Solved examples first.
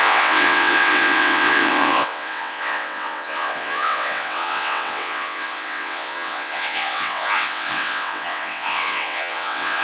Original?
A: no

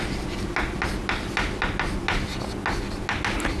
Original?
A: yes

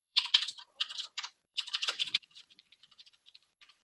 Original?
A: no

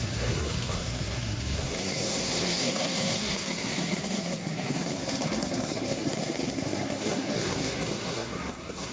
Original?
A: no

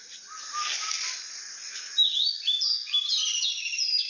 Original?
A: yes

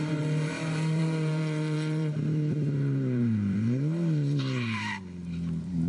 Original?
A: no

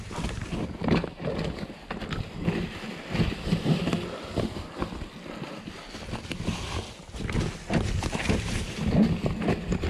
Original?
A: yes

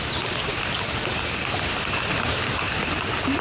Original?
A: yes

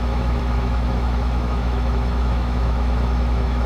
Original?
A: no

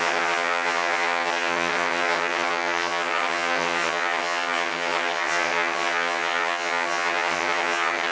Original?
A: no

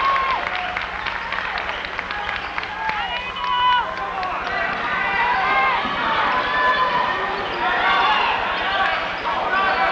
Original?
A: yes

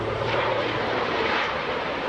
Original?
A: no